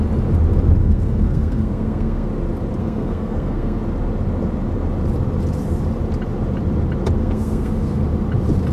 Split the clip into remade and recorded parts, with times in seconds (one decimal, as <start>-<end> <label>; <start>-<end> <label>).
0.0-0.8 recorded; 0.8-2.3 remade; 2.3-2.8 recorded; 2.8-3.8 remade; 3.8-7.2 recorded; 7.2-8.0 remade; 8.0-8.7 recorded